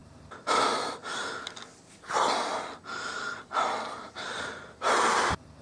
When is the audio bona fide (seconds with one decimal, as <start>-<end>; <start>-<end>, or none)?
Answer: 0.6-5.6